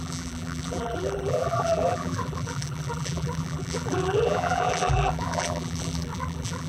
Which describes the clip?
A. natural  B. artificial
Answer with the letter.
B